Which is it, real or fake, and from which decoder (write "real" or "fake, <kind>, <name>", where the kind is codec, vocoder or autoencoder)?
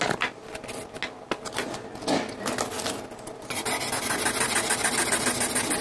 real